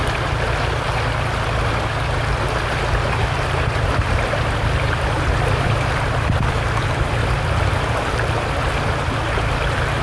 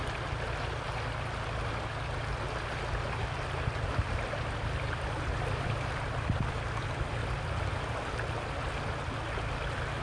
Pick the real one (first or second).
second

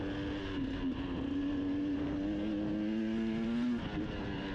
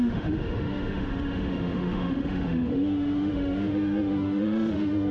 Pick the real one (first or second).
first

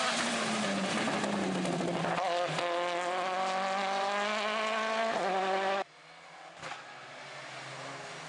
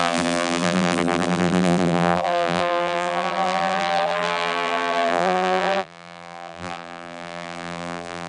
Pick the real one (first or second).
first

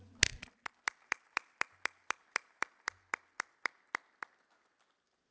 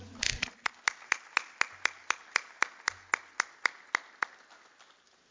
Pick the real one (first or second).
second